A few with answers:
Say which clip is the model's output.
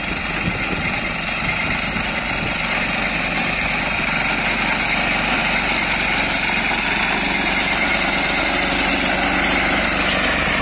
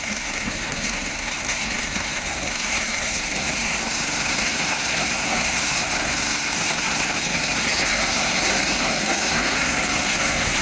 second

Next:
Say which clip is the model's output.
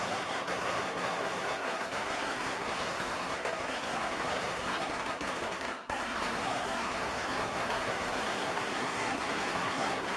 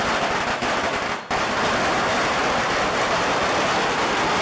first